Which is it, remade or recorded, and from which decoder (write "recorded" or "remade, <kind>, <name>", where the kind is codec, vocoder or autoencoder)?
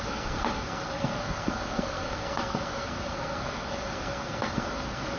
remade, codec, SNAC